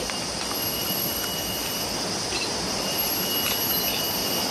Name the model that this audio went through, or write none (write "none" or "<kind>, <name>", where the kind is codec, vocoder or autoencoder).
none